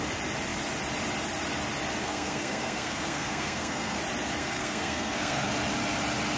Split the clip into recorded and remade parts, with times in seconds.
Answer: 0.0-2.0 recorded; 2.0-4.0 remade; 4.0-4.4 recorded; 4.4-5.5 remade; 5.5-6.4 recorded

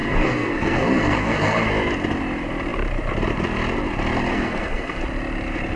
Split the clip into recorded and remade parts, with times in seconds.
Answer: 0.0-1.7 remade; 1.7-4.3 recorded; 4.3-5.0 remade; 5.0-5.8 recorded

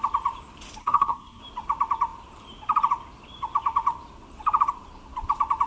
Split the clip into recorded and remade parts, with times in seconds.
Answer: 0.0-0.8 recorded; 0.8-1.4 remade; 1.4-5.7 recorded

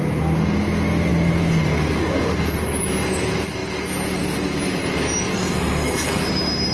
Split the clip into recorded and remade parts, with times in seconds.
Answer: 0.0-5.3 recorded; 5.3-6.2 remade; 6.2-6.7 recorded